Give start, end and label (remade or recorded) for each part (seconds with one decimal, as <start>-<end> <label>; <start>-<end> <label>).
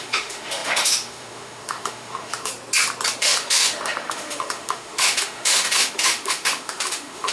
0.0-2.5 remade; 2.5-3.2 recorded; 3.2-7.3 remade